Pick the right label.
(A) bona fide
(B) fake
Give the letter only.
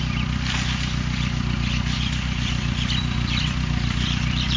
A